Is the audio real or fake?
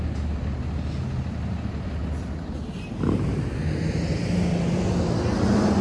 real